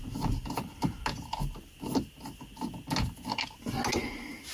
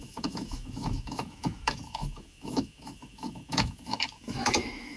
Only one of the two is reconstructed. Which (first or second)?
second